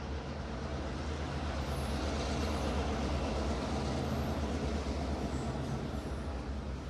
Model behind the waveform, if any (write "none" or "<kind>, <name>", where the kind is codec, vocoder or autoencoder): none